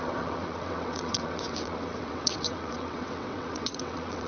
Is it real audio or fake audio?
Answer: fake